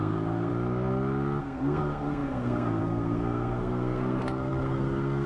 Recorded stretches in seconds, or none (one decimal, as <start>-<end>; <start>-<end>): 0.5-1.4